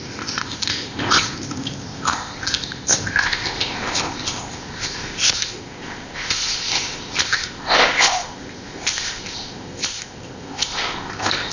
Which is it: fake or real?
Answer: fake